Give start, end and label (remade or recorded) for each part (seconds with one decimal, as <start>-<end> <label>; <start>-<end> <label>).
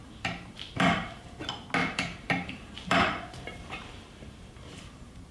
0.0-1.3 remade; 1.3-1.8 recorded; 1.8-5.3 remade